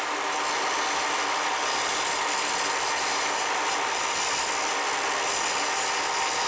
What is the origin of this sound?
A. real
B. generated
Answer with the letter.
A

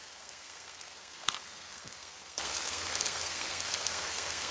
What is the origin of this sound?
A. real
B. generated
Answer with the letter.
B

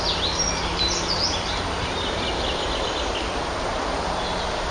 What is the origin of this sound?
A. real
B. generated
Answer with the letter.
A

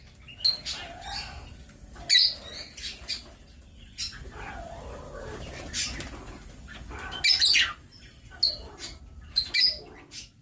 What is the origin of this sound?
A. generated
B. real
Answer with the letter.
B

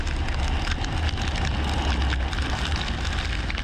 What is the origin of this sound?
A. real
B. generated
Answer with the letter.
A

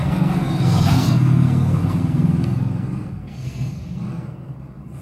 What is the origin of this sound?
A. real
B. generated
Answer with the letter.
B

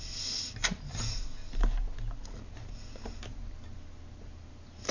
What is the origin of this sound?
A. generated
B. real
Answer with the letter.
B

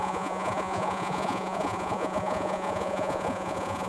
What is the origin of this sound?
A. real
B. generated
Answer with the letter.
B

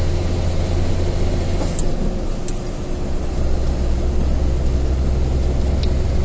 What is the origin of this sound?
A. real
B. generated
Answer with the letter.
A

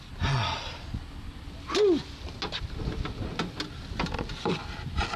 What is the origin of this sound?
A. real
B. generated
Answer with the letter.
A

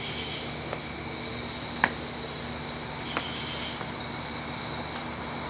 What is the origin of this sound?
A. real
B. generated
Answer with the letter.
A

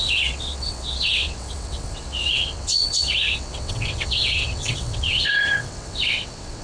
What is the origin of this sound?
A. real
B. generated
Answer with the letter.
B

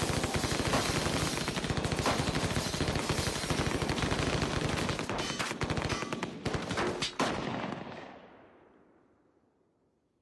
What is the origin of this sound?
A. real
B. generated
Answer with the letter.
A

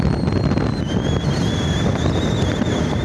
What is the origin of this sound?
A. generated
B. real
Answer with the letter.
B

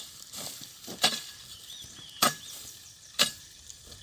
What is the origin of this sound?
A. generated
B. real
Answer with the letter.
A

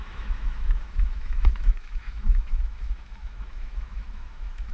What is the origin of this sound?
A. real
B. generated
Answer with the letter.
B